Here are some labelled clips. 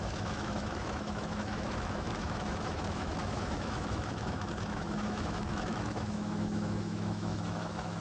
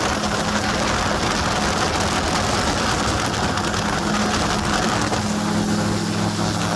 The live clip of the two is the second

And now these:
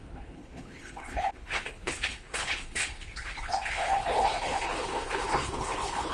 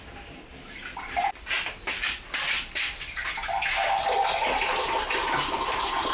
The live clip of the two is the second